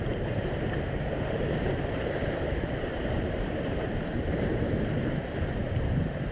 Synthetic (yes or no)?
yes